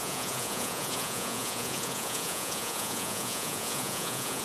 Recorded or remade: remade